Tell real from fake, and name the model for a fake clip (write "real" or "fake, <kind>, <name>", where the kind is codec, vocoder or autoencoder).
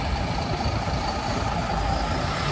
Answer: real